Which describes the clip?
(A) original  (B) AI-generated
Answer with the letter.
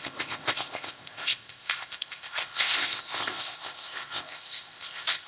B